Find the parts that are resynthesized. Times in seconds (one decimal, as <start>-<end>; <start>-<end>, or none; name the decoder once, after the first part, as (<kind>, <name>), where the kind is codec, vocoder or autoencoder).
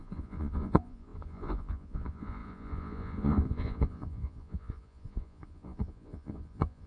0.0-6.9 (vocoder, Vocos)